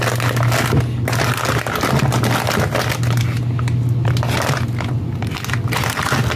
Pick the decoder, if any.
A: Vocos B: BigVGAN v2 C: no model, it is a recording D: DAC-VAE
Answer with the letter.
C